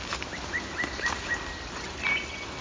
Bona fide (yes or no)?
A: yes